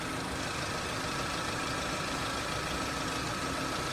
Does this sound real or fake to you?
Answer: real